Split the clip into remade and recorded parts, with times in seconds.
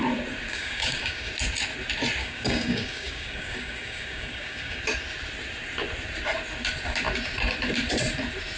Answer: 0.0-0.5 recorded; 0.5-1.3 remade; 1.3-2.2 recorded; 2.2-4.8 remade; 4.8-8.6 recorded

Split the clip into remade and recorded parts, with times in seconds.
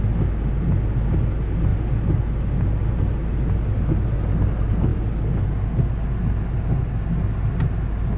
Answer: 0.0-8.2 recorded